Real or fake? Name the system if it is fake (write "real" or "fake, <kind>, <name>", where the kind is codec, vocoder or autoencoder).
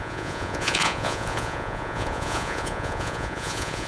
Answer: fake, vocoder, Vocos